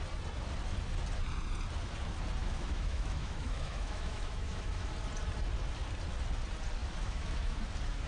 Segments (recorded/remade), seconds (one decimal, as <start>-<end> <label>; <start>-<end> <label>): 0.0-2.4 recorded; 2.4-4.9 remade; 4.9-6.8 recorded; 6.8-7.6 remade; 7.6-8.1 recorded